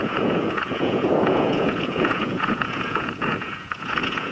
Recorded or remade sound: remade